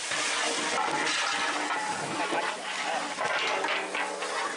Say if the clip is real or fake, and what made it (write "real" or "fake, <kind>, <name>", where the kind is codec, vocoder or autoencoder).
real